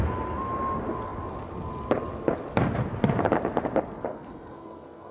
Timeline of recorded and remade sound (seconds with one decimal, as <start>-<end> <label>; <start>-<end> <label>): 0.0-4.1 recorded; 4.1-5.1 remade